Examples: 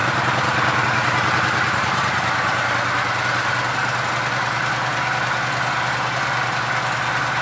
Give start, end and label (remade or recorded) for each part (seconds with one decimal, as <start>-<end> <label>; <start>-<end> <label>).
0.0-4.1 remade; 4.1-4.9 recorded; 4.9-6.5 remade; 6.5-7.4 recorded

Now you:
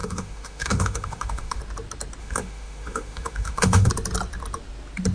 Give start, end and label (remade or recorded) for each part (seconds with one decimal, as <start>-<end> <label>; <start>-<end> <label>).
0.0-1.6 remade; 1.6-2.2 recorded; 2.2-3.9 remade; 3.9-5.1 recorded

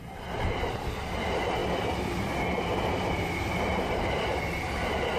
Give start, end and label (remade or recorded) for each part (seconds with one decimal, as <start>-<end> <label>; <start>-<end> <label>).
0.0-5.2 recorded

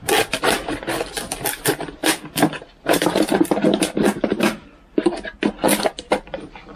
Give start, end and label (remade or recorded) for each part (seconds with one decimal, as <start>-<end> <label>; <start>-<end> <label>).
0.0-6.8 recorded

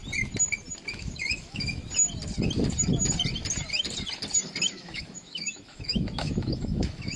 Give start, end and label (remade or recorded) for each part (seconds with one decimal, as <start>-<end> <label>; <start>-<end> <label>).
0.0-0.9 recorded; 0.9-1.8 remade; 1.8-4.7 recorded; 4.7-7.2 remade